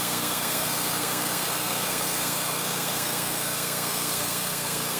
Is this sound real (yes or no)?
no